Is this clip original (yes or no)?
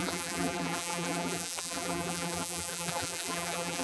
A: no